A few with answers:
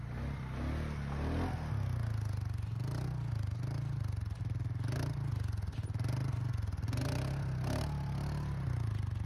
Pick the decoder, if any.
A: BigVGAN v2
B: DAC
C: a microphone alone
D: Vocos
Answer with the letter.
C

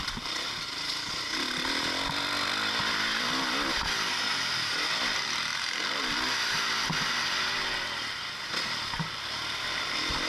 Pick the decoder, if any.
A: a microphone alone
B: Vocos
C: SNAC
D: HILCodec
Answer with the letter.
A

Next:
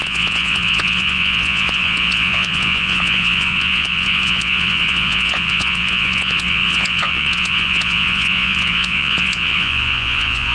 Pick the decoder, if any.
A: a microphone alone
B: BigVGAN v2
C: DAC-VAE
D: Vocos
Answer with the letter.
D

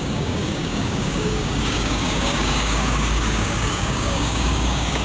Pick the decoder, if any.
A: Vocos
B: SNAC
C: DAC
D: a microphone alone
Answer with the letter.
C